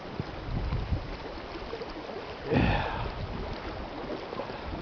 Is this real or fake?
real